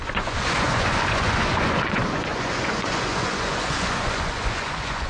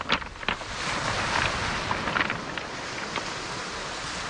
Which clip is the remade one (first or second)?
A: first